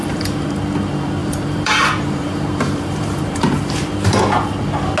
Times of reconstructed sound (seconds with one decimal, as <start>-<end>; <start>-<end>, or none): 0.0-0.5; 1.2-4.2